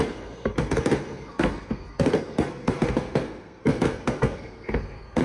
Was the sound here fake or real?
fake